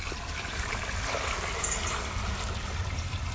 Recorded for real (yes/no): yes